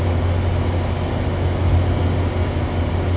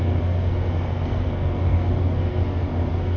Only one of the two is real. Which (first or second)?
first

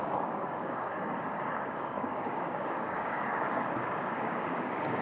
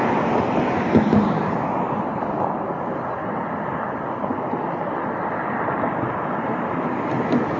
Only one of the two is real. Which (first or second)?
second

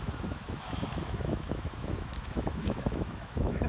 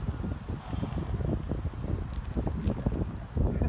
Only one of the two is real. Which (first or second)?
second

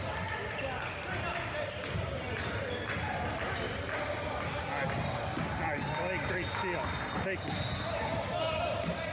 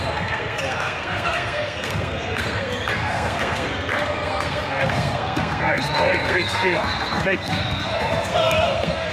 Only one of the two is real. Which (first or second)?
first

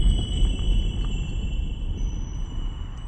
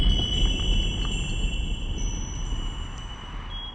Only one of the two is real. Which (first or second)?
second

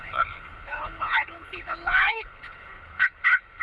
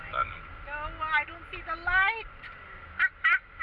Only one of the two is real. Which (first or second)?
second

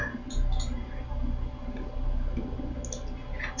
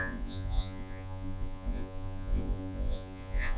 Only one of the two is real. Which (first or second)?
first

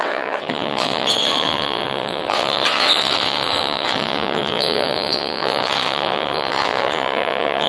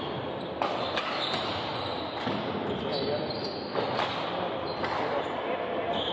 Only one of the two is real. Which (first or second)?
second